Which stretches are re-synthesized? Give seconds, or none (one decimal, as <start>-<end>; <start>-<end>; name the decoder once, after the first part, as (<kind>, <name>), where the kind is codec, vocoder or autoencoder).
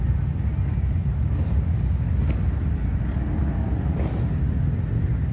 1.0-1.7 (vocoder, BigVGAN v2)